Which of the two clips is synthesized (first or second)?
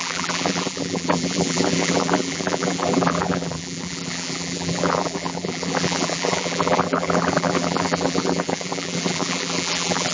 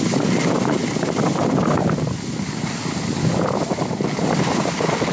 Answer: first